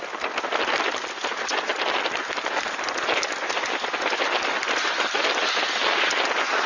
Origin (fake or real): real